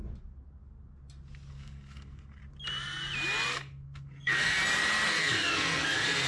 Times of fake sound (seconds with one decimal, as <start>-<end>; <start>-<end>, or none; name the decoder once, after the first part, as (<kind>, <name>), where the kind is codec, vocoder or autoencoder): 1.5-2.4 (codec, SNAC); 3.5-4.6; 5.1-6.3